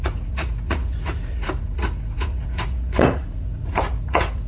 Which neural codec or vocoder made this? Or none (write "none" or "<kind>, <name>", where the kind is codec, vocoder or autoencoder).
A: vocoder, Vocos